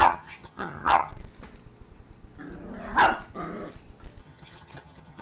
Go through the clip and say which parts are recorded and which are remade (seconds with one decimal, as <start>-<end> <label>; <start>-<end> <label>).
0.0-1.1 remade; 1.1-4.2 recorded; 4.2-5.2 remade